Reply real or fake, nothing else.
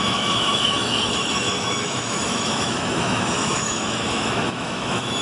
fake